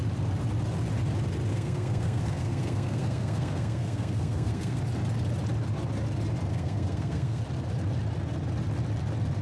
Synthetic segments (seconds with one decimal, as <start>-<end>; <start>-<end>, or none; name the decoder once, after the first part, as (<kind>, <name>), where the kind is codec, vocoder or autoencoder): 1.5-4.8 (codec, SNAC); 6.5-7.4

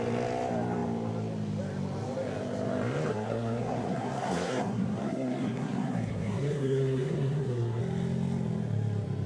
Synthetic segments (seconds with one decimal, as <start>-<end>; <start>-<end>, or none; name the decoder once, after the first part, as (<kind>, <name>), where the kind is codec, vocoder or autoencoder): 3.1-7.8 (codec, SNAC)

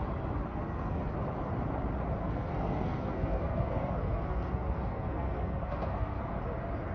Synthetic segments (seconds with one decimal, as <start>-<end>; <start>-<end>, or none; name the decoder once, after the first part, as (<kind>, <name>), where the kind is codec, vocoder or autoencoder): 0.5-1.1 (codec, SNAC); 2.2-6.3

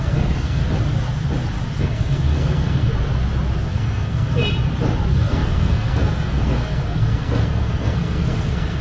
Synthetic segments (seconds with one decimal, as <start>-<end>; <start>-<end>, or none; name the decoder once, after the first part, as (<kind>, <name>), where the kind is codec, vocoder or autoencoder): 0.0-0.6 (codec, SNAC); 1.8-2.9; 3.7-4.4; 5.1-8.8

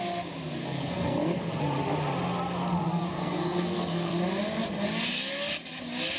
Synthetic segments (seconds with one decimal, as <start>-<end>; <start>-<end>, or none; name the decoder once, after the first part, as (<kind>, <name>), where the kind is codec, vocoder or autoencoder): 0.6-1.6 (codec, SNAC); 3.1-4.1

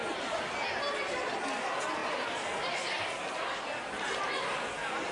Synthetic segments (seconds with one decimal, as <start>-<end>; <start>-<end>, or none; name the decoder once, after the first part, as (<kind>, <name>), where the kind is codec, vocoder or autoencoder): none